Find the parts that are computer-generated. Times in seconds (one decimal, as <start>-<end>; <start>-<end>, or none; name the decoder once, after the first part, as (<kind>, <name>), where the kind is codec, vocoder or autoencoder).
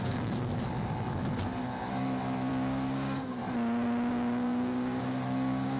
0.0-0.5 (codec, DAC); 2.5-3.4; 4.1-5.8